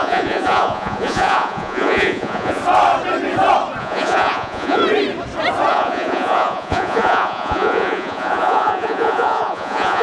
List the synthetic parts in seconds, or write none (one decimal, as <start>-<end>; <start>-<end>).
0.0-2.6; 3.8-4.8; 5.7-10.0